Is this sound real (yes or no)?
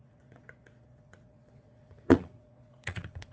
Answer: no